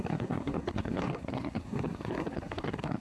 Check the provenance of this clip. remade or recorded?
remade